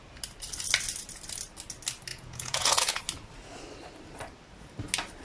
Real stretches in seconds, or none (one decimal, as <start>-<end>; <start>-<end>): 0.0-2.1; 3.0-5.2